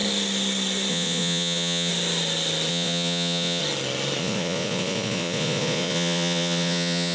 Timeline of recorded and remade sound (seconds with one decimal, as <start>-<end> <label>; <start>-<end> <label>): 0.0-0.9 recorded; 0.9-1.9 remade; 1.9-2.7 recorded; 2.7-3.6 remade; 3.6-4.2 recorded; 4.2-7.1 remade